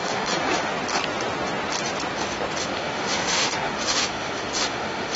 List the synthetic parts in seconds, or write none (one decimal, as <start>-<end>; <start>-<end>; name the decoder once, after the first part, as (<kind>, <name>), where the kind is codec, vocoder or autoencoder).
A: 0.0-0.7 (autoencoder, DAC-VAE); 2.6-5.2